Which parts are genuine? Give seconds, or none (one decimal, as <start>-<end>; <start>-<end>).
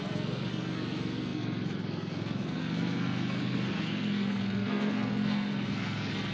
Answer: none